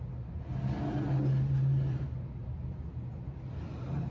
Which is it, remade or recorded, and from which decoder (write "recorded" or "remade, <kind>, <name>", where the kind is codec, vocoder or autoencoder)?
recorded